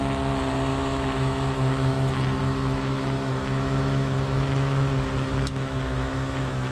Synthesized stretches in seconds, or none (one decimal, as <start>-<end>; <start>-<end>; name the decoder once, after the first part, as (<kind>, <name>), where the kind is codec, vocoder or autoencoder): 0.7-1.9 (autoencoder, DAC-VAE); 2.4-6.7